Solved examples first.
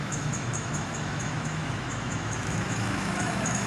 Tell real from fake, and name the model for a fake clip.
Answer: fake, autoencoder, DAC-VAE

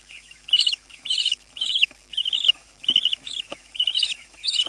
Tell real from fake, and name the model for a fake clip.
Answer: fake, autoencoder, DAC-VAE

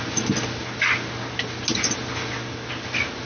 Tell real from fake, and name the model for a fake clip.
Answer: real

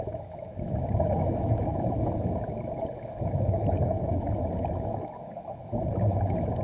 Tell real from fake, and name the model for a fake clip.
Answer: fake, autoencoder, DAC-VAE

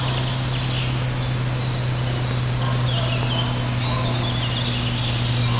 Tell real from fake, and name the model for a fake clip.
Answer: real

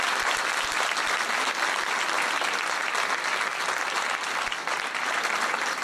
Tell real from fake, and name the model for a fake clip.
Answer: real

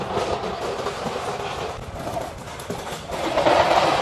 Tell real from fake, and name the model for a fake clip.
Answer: real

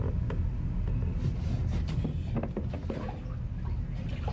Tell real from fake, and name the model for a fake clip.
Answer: real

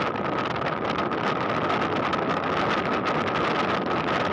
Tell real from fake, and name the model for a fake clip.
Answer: real